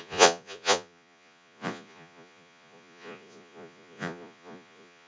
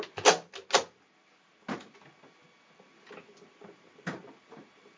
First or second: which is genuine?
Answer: second